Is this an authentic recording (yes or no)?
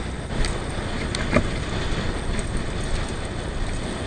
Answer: yes